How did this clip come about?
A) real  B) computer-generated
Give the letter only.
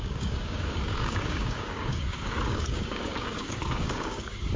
B